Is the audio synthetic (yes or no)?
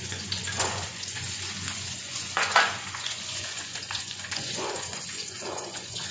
yes